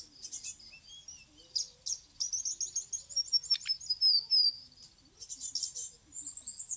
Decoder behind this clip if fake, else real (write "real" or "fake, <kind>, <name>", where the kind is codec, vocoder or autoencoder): real